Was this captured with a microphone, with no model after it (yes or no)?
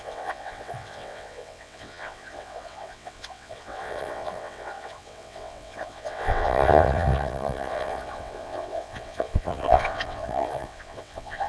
no